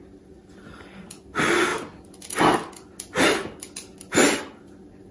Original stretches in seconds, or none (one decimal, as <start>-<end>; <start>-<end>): 0.0-5.1